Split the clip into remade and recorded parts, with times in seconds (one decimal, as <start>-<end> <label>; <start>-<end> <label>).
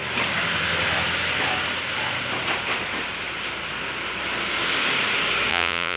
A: 0.0-5.5 recorded; 5.5-6.0 remade